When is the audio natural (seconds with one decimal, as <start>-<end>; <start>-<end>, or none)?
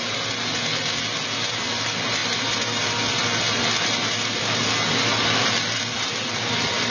0.0-6.9